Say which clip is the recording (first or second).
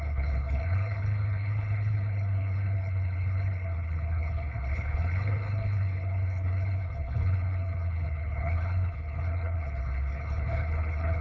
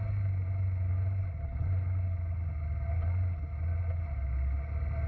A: second